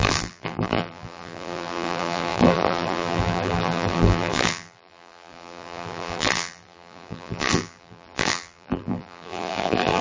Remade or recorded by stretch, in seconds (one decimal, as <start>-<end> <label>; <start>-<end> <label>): 0.0-10.0 remade